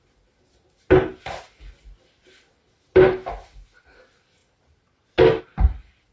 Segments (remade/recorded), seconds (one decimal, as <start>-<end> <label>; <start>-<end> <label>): 0.0-6.1 recorded